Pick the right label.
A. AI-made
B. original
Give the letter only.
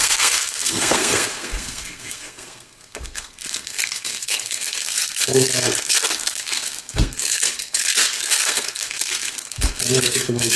A